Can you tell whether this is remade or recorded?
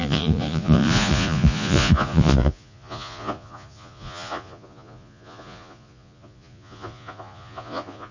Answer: remade